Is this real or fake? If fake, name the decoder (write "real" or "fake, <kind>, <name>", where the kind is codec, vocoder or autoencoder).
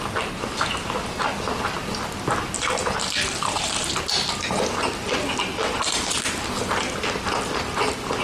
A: real